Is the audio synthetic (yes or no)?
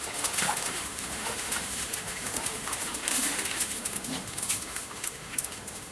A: yes